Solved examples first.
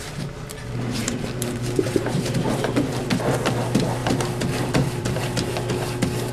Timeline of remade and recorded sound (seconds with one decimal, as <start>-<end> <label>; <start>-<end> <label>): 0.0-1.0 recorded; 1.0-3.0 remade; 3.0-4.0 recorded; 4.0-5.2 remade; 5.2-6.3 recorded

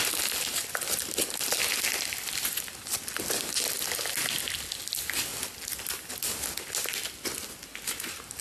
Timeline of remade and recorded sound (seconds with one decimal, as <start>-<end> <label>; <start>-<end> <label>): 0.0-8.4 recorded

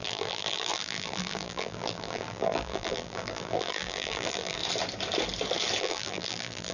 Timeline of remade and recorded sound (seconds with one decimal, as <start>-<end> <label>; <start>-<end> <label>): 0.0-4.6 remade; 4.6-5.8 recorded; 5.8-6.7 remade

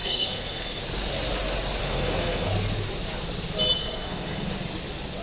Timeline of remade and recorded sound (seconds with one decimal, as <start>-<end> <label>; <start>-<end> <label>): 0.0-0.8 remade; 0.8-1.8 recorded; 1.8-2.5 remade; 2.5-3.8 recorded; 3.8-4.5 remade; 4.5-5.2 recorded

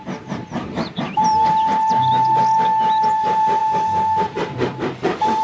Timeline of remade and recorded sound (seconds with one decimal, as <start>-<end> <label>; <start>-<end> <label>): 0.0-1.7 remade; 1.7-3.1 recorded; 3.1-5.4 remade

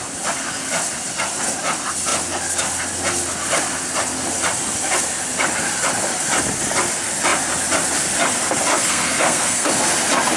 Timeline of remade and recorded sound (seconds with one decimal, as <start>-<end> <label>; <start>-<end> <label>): 0.0-8.7 recorded; 8.7-9.7 remade; 9.7-10.4 recorded

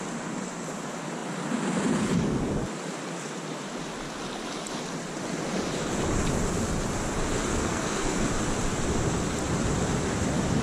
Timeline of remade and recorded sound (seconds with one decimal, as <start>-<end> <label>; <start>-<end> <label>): 0.0-7.5 recorded; 7.5-8.3 remade; 8.3-10.6 recorded

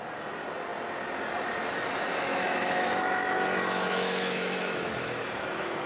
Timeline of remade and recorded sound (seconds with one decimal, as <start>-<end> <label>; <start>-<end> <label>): 0.0-2.1 recorded; 2.1-5.9 remade